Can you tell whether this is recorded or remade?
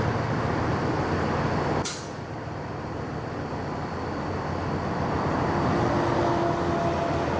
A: recorded